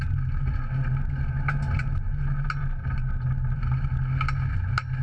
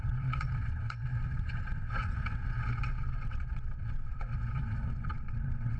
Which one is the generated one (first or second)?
second